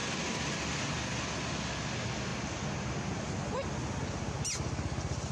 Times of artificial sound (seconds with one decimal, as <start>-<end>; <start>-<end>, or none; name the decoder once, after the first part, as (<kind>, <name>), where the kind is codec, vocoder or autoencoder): 0.0-0.9 (vocoder, BigVGAN v2)